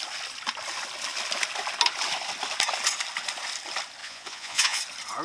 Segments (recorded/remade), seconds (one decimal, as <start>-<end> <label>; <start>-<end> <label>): 0.0-4.0 recorded; 4.0-4.8 remade; 4.8-5.2 recorded